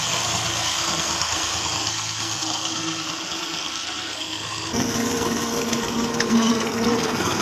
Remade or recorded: remade